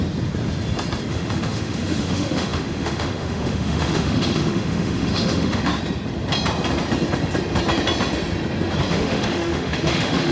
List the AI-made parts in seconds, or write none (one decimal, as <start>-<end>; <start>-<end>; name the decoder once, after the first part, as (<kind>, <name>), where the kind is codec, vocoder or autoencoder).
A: 1.1-5.7 (autoencoder, DAC-VAE); 8.9-10.3